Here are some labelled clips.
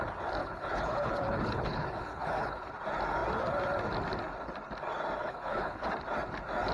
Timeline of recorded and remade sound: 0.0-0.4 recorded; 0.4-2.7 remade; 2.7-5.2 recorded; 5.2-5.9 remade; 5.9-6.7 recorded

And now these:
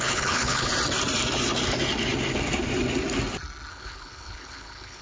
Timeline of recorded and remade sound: 0.0-0.7 remade; 0.7-3.7 recorded; 3.7-5.0 remade

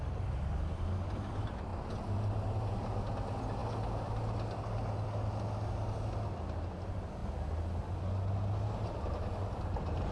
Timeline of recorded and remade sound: 0.0-10.1 recorded

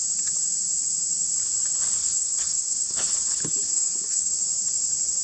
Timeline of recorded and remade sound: 0.0-2.0 recorded; 2.0-4.3 remade; 4.3-5.2 recorded

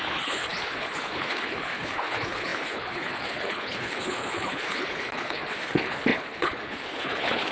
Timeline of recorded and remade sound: 0.0-7.5 remade

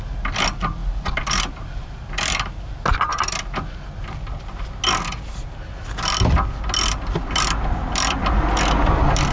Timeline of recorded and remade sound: 0.0-9.3 recorded